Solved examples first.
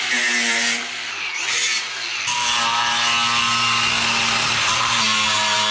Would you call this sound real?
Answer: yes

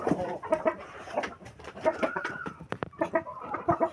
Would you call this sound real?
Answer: no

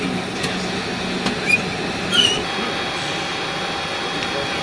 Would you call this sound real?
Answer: yes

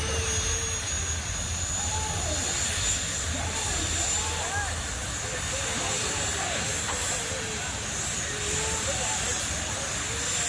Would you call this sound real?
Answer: yes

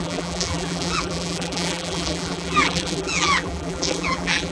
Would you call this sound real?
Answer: no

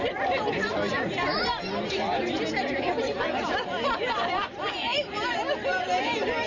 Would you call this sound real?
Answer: no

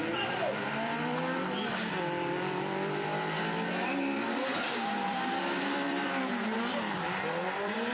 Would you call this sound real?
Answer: no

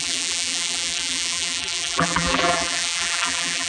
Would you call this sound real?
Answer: no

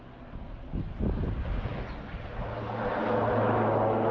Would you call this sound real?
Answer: yes